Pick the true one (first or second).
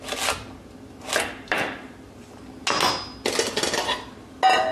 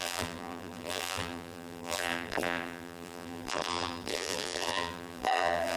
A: first